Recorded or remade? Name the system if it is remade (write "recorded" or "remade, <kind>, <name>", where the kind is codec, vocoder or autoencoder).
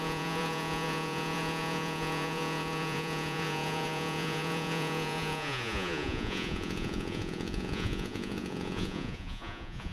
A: remade, vocoder, Vocos